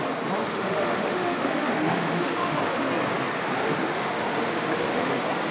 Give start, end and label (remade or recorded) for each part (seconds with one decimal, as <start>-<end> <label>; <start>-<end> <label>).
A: 0.0-0.5 recorded; 0.5-2.9 remade; 2.9-3.6 recorded; 3.6-5.1 remade; 5.1-5.5 recorded